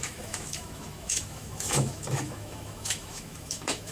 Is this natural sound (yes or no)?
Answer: no